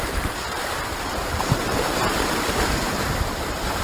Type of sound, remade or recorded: remade